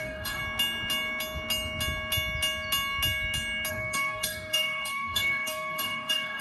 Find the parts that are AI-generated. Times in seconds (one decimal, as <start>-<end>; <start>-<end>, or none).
0.0-0.4; 3.7-6.4